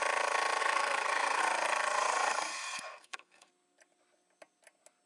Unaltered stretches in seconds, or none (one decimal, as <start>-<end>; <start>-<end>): 0.0-0.6; 1.4-2.5; 3.5-5.1